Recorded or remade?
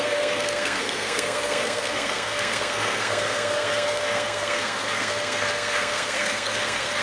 remade